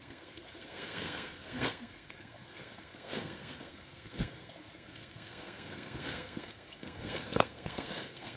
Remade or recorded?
remade